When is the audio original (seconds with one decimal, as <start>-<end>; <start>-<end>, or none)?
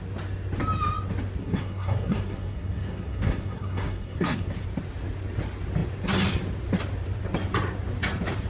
0.0-1.4; 4.5-8.5